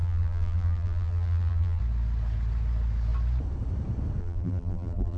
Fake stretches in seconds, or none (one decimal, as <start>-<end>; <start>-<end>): 0.0-1.8; 4.2-5.2